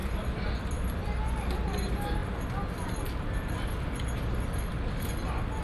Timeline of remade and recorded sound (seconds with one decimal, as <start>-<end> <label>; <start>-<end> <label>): 0.0-5.6 recorded